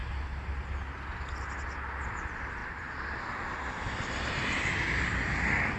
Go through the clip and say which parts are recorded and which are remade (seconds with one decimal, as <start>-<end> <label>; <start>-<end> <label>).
0.0-1.4 recorded; 1.4-5.8 remade